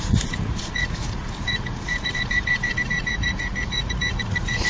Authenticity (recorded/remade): remade